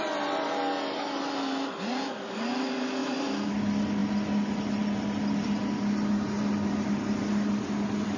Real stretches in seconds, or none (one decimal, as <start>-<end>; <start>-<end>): 0.0-8.2